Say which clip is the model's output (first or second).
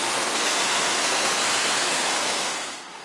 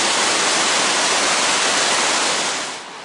first